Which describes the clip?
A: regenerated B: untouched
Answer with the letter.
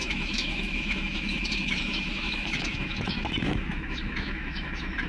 A